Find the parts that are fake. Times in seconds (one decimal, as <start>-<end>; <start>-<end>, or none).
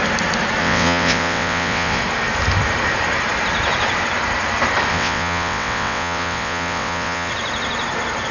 0.6-2.0; 4.9-7.3